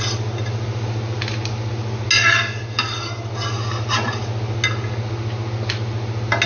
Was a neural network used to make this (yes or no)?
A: no